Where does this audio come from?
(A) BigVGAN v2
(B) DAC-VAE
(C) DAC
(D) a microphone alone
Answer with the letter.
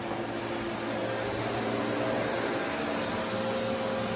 D